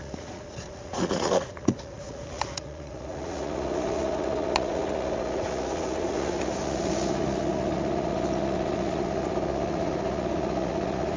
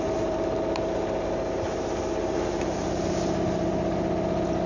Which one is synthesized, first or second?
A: first